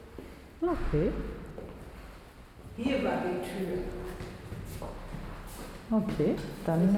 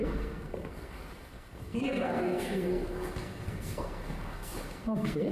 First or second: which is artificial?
second